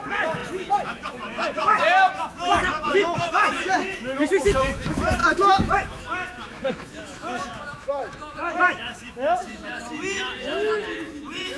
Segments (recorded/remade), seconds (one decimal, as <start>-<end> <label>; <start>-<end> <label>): 0.0-11.6 remade